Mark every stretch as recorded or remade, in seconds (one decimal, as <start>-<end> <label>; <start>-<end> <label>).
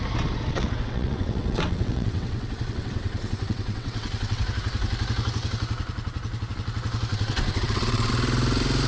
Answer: 0.0-0.5 recorded; 0.5-4.4 remade; 4.4-7.1 recorded; 7.1-8.1 remade; 8.1-8.9 recorded